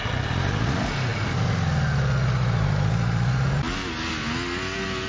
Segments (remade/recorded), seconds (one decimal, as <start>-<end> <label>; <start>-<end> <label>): 0.0-5.1 recorded

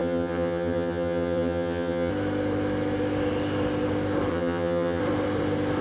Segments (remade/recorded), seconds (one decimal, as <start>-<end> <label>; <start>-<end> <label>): 0.0-2.1 remade; 2.1-4.3 recorded; 4.3-5.0 remade; 5.0-5.8 recorded

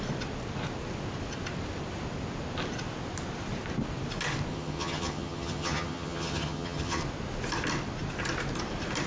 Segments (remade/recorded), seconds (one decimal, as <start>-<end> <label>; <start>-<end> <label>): 0.0-4.5 recorded; 4.5-7.0 remade; 7.0-9.1 recorded